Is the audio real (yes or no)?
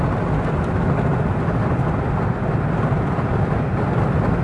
yes